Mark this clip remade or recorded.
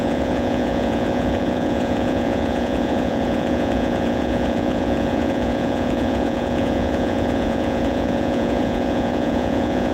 remade